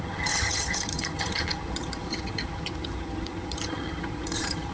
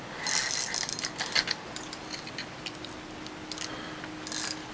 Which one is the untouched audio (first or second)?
second